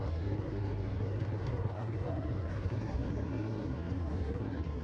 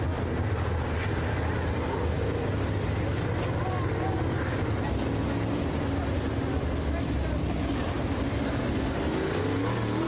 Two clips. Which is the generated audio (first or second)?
first